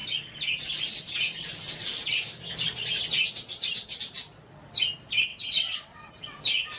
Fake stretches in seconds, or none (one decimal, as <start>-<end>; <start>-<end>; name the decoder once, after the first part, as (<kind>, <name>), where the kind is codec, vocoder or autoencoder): 5.3-6.1 (vocoder, WaveNeXt)